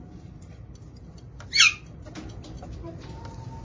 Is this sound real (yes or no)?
yes